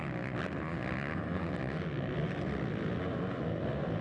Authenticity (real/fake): real